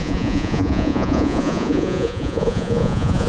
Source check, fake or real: fake